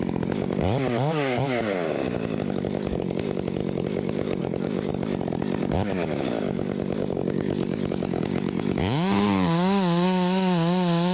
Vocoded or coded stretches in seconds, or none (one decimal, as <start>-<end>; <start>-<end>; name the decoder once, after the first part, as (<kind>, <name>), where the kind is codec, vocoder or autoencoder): 0.0-4.9 (codec, DAC); 5.6-11.1